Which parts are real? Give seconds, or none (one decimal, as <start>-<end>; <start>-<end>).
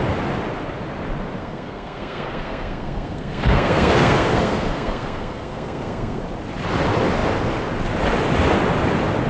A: 0.0-1.4; 6.2-9.3